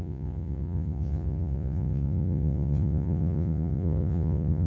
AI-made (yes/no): yes